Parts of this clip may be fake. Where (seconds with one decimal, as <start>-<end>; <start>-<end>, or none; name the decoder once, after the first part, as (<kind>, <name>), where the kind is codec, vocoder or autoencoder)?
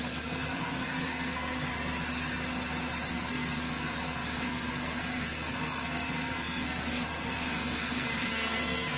0.0-1.7 (codec, SNAC); 3.1-9.0